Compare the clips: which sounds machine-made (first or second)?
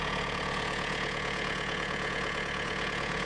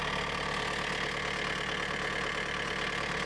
first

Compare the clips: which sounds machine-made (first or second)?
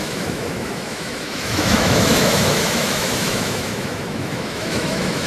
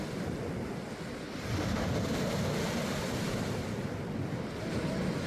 first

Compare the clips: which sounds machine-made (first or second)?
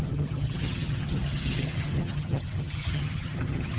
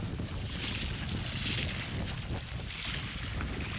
first